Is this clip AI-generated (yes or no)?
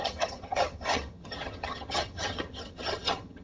yes